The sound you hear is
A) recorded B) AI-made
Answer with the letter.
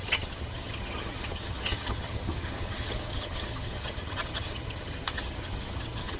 B